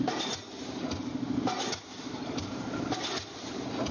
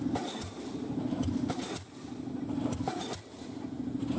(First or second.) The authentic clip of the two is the first